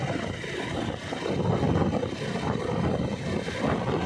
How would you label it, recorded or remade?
recorded